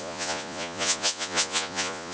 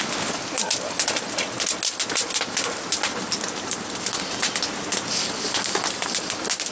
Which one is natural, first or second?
second